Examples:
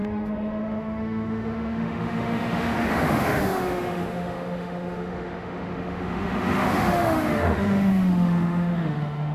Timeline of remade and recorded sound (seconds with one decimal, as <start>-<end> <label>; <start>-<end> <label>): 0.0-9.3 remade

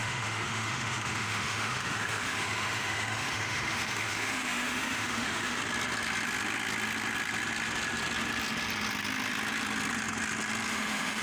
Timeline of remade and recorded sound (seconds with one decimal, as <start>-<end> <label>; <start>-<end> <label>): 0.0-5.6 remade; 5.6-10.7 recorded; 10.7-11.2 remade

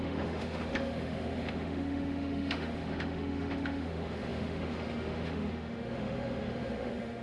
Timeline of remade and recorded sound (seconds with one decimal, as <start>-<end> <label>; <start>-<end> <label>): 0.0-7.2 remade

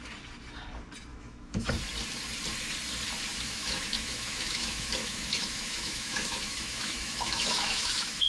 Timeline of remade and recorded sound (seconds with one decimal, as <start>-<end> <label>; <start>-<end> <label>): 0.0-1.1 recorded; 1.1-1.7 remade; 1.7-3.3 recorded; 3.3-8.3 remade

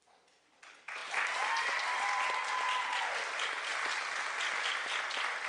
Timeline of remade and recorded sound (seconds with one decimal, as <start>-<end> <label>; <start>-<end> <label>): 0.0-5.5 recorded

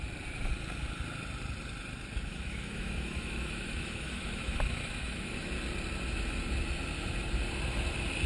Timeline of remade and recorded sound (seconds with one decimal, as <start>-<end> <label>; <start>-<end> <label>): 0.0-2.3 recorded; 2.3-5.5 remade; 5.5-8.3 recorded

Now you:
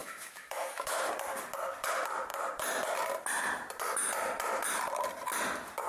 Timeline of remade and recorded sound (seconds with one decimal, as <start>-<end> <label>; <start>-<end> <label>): 0.0-1.1 remade; 1.1-5.9 recorded

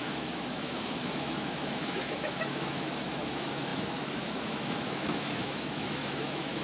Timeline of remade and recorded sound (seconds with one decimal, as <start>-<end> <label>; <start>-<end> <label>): 0.0-6.6 remade